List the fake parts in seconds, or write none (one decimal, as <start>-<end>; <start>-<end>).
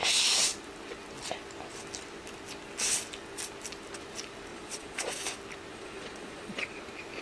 4.5-5.1; 5.7-6.8